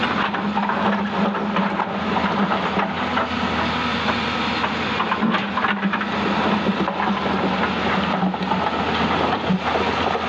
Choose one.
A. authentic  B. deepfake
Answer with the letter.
A